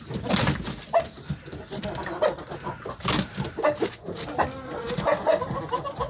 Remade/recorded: recorded